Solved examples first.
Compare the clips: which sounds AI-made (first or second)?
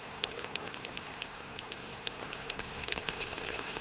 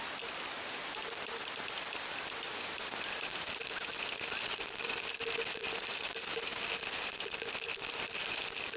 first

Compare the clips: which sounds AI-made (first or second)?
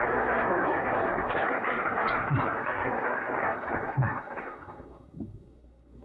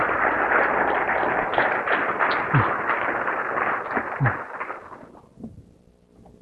first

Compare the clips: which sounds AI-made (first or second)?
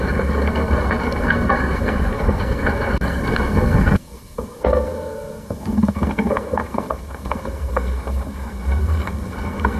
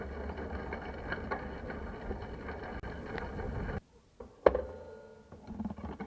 first